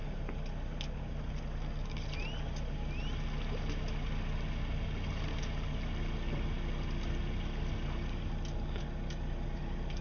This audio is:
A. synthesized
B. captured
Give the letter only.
B